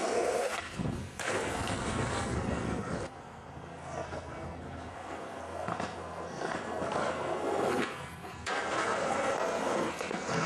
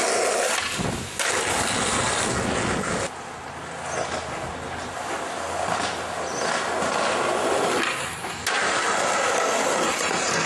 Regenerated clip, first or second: first